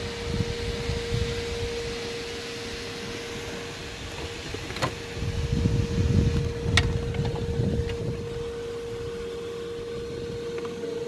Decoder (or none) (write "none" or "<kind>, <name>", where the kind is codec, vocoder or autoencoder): none